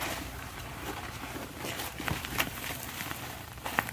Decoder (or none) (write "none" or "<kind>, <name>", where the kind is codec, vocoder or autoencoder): vocoder, BigVGAN v2